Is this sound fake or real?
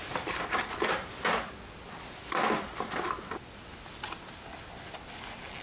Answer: real